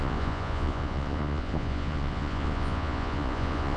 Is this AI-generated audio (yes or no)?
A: yes